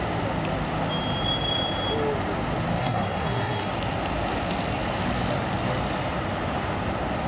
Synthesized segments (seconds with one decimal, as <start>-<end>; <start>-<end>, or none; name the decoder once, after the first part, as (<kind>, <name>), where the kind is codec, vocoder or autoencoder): 2.8-3.7 (codec, SNAC)